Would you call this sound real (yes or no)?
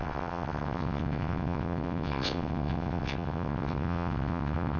no